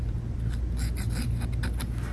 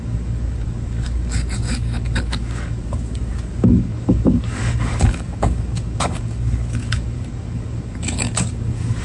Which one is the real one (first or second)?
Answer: first